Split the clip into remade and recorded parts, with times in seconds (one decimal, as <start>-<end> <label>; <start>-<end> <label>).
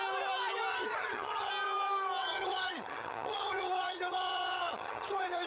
0.0-0.7 recorded; 0.7-1.5 remade; 1.5-2.2 recorded; 2.2-5.5 remade